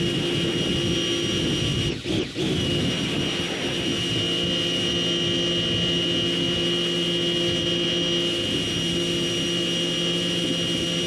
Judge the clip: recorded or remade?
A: recorded